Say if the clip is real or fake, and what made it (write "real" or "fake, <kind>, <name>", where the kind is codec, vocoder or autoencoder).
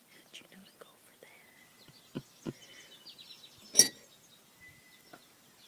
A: real